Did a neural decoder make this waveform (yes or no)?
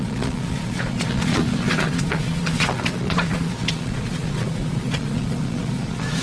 yes